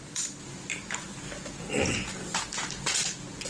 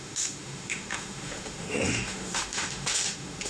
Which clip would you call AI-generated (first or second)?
second